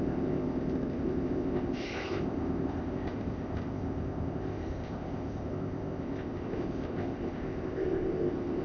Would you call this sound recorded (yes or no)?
no